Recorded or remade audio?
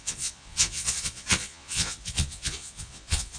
remade